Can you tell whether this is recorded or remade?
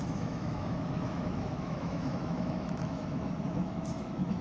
remade